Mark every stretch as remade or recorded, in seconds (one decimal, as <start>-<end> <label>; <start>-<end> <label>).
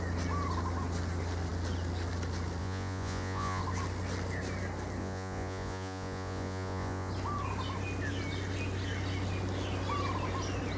0.0-2.6 recorded; 2.6-3.6 remade; 3.6-5.0 recorded; 5.0-7.1 remade; 7.1-10.8 recorded